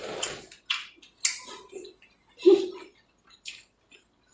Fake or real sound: real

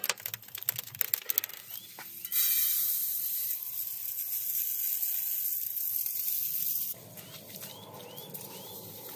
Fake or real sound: real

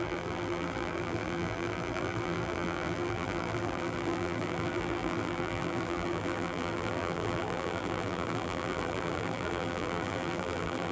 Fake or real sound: fake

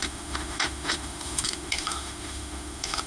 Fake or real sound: fake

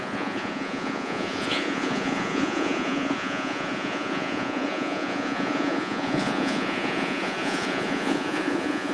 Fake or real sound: fake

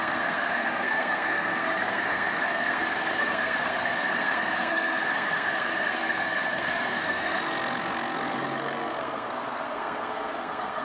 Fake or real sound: fake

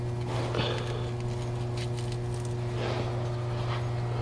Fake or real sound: real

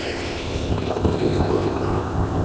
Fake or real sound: fake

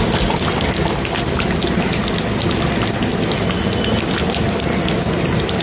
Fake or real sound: real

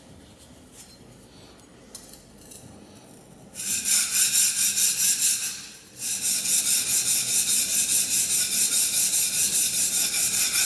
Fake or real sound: real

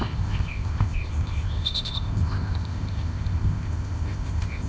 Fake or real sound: fake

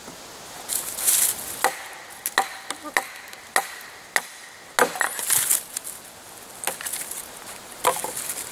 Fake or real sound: real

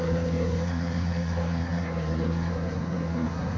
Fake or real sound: fake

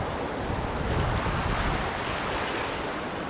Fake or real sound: real